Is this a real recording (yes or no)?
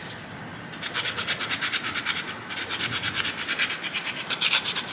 yes